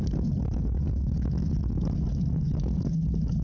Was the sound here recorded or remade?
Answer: recorded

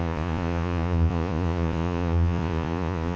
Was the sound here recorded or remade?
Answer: remade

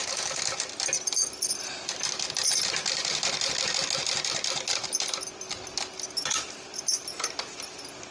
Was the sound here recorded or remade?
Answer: recorded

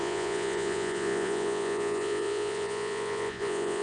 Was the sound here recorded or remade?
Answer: remade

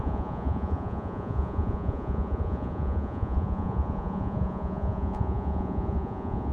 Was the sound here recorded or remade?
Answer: remade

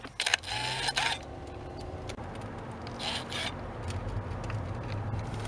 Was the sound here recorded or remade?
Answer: recorded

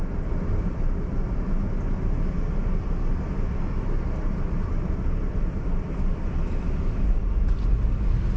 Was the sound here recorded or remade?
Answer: recorded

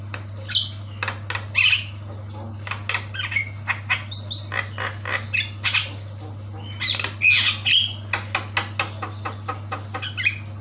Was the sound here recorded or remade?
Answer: recorded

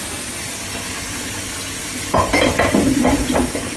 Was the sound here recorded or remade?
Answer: recorded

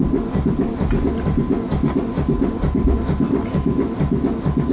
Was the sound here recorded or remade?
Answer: recorded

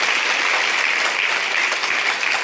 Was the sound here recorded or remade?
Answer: recorded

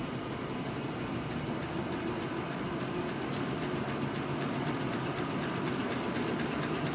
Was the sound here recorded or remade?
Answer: recorded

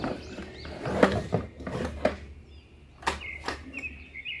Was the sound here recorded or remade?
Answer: recorded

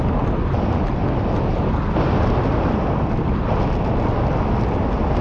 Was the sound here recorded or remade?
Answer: recorded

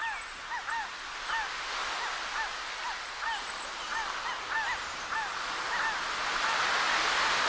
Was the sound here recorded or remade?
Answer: recorded